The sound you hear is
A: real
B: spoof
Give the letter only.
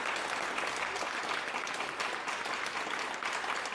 A